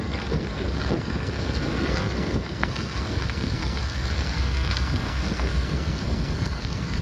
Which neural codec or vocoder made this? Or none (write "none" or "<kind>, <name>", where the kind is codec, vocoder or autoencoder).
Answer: codec, SNAC